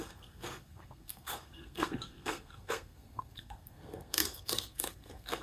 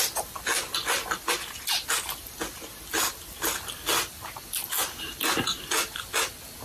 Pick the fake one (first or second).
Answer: first